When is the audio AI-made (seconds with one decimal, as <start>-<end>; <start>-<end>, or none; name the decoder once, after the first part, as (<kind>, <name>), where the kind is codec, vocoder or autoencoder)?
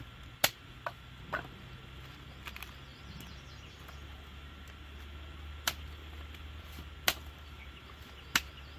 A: none